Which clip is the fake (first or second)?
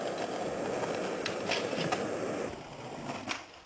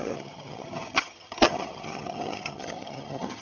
second